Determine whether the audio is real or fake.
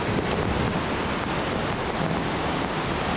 real